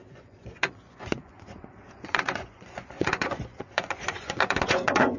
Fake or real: fake